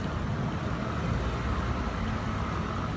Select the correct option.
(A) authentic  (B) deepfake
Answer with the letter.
A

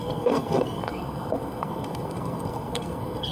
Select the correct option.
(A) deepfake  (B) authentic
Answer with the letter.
A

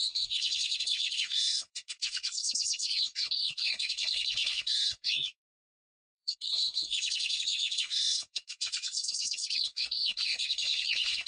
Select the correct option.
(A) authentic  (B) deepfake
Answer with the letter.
B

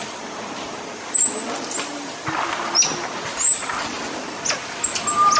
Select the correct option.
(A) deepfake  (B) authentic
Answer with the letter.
B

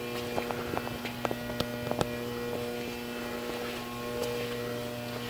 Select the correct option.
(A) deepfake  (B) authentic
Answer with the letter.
B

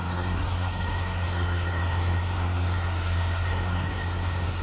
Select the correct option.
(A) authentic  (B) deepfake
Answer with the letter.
B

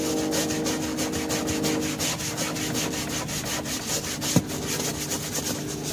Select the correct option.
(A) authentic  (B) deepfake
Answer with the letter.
A